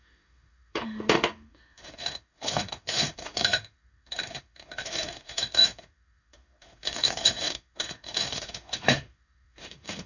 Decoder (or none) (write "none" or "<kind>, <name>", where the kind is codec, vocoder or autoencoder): autoencoder, DAC-VAE